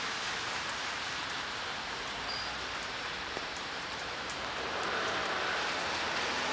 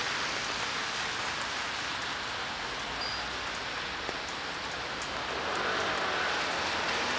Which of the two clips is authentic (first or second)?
second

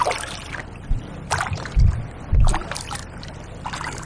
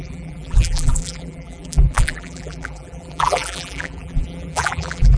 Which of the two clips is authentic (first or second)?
first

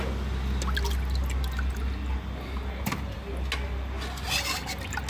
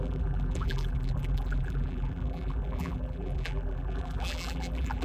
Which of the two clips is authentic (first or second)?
first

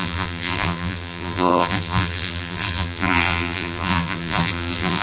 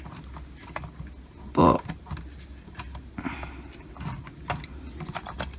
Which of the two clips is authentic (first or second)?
second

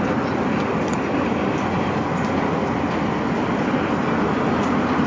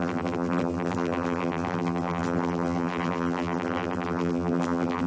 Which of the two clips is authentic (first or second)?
first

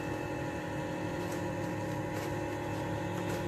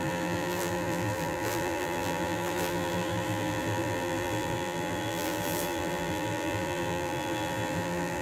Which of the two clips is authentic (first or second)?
first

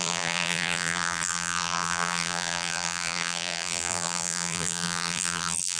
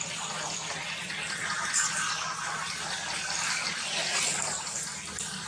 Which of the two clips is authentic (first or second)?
second